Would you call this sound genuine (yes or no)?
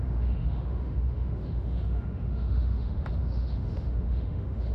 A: no